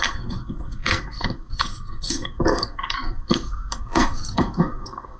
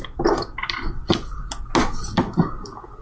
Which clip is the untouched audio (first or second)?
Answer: second